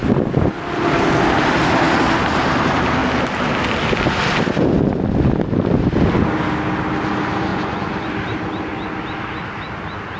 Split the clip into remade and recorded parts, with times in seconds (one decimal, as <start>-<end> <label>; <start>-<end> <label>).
0.0-7.5 recorded; 7.5-8.1 remade; 8.1-10.2 recorded